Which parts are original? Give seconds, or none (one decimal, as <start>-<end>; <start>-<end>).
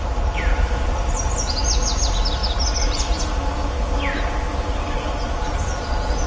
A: 0.0-6.3